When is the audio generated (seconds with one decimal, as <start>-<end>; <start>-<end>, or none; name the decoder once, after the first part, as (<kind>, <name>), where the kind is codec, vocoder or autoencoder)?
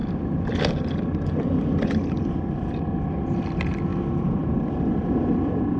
0.0-3.5 (vocoder, BigVGAN v2); 3.9-4.9